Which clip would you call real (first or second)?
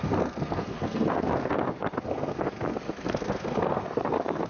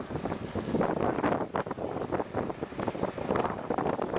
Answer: second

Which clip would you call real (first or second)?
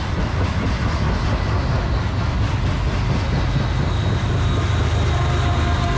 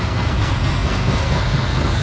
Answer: first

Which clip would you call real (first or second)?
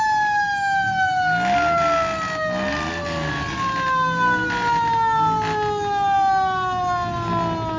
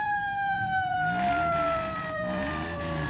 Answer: first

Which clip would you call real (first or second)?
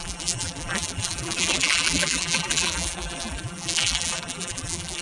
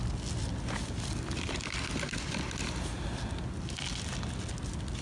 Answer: second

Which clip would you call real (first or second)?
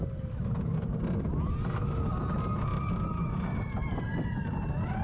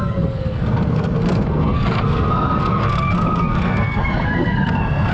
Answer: first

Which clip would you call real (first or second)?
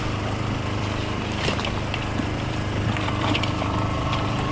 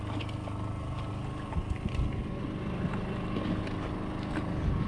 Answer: second